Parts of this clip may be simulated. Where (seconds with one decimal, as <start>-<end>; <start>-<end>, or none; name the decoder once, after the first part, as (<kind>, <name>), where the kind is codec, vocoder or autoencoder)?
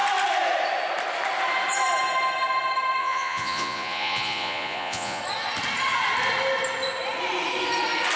3.0-5.2 (vocoder, Vocos)